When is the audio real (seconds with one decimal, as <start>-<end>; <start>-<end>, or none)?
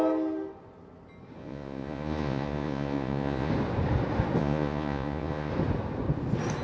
0.0-1.4; 3.5-4.4; 5.5-6.6